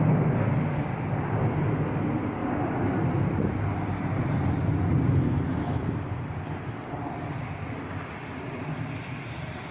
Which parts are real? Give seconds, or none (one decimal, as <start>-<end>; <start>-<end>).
0.0-9.7